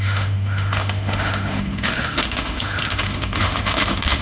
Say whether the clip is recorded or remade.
remade